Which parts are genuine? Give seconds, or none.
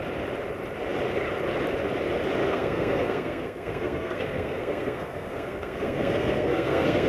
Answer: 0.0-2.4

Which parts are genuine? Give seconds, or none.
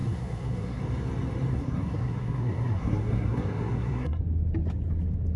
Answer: 0.8-1.5; 4.2-5.4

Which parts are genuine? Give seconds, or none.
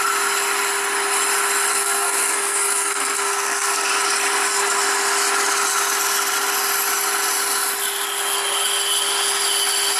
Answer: 0.0-1.7; 3.9-10.0